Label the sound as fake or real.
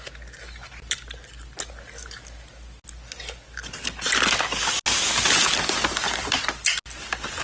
real